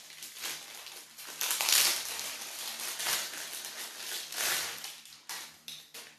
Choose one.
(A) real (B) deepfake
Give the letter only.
A